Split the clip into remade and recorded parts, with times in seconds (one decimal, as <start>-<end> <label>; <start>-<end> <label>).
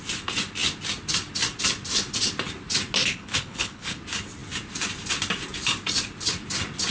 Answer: 0.0-3.0 recorded; 3.0-4.0 remade; 4.0-6.9 recorded